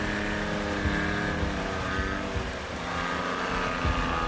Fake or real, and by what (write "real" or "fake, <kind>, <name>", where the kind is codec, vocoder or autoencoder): real